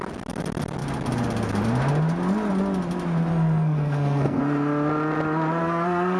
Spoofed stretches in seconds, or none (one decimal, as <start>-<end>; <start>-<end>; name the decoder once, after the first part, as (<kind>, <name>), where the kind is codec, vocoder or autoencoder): 3.3-4.4 (codec, SNAC); 5.6-6.2

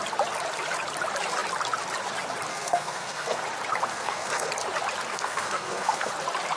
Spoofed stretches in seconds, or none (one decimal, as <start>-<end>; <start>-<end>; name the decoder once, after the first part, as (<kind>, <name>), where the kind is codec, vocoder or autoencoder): 2.5-3.4 (codec, SNAC); 3.9-4.5; 5.1-6.1

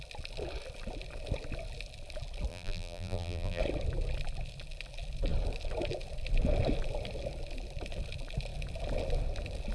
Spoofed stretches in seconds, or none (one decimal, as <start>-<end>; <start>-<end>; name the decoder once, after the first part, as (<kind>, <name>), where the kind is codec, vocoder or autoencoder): 2.5-3.6 (vocoder, BigVGAN v2)

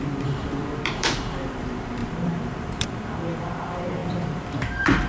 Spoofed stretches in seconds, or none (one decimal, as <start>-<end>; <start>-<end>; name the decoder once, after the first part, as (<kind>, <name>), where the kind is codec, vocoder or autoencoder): 0.0-5.1 (vocoder, BigVGAN v2)

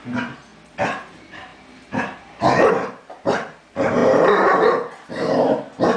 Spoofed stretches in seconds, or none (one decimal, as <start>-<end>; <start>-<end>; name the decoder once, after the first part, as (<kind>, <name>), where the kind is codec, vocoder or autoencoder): 0.0-0.5 (vocoder, BigVGAN v2); 1.1-6.0

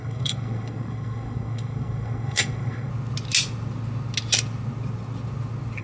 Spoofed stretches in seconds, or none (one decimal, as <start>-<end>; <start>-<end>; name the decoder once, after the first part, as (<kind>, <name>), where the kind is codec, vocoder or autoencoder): 0.0-2.9 (codec, SNAC)